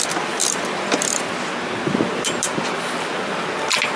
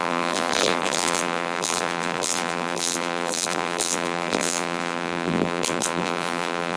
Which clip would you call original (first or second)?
first